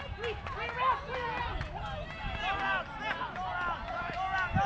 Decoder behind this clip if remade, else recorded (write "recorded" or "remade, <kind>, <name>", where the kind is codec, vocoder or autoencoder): recorded